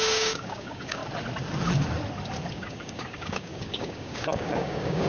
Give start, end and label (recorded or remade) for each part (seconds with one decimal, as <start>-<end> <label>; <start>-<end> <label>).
0.0-1.0 remade; 1.0-2.5 recorded; 2.5-5.1 remade